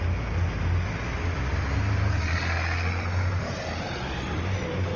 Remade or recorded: recorded